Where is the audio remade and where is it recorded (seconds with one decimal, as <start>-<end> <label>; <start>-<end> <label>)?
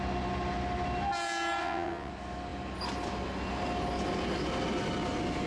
0.0-1.6 recorded; 1.6-2.1 remade; 2.1-5.5 recorded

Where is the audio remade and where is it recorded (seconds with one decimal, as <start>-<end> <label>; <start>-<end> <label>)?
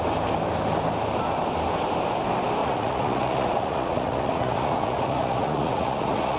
0.0-2.6 recorded; 2.6-6.4 remade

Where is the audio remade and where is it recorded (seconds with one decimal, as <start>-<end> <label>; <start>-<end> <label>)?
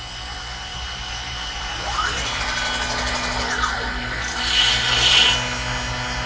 0.0-0.7 recorded; 0.7-2.4 remade; 2.4-6.3 recorded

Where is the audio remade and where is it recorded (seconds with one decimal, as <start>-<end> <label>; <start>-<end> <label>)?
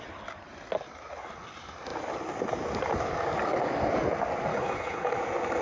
0.0-4.5 recorded; 4.5-5.1 remade; 5.1-5.6 recorded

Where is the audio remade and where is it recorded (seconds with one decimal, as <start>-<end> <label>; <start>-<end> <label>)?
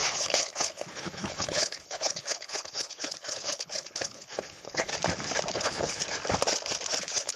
0.0-4.9 remade; 4.9-5.5 recorded; 5.5-6.0 remade; 6.0-7.0 recorded; 7.0-7.4 remade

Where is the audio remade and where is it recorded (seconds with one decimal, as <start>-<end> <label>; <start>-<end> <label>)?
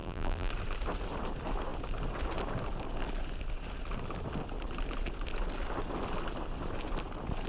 0.0-0.5 remade; 0.5-7.5 recorded